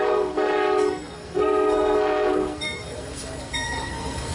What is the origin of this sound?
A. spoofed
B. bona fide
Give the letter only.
A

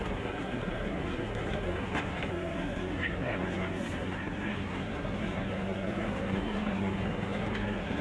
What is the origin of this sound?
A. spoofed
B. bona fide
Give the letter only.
A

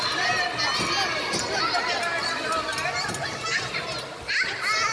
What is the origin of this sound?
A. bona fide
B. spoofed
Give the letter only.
A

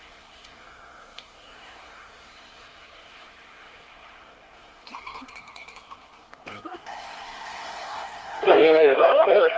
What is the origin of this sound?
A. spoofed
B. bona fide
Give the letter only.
A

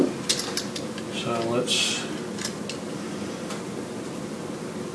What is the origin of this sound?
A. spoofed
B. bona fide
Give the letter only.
B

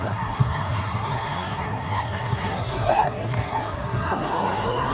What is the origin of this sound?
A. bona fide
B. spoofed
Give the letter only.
B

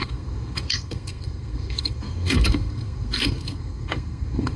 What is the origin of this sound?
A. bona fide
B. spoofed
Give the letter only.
B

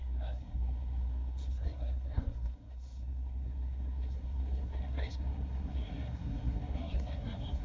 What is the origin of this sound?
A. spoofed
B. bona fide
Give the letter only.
A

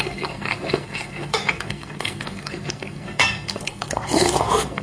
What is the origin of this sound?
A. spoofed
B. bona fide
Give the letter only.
A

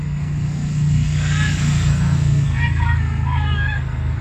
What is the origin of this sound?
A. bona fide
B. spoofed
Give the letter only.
B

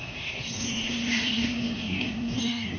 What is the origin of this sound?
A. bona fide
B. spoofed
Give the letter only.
B